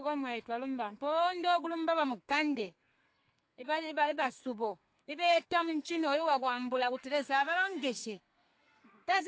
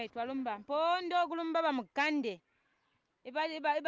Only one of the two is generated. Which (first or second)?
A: first